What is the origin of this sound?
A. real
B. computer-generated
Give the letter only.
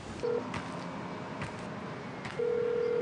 A